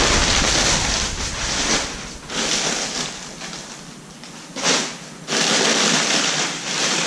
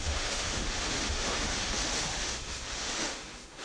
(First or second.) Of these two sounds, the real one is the first